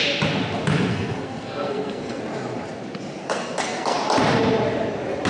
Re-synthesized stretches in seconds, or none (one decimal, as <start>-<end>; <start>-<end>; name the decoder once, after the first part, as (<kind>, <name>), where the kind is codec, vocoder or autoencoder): 0.9-2.2 (codec, SNAC); 3.2-4.0